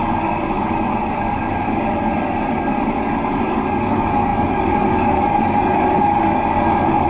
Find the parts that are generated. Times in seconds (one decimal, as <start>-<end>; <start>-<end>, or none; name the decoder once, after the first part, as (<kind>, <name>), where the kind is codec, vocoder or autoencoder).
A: 0.0-7.1 (codec, DAC)